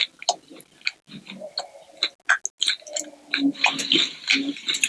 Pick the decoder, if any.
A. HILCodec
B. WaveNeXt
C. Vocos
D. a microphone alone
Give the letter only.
D